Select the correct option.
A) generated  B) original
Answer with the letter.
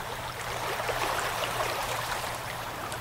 A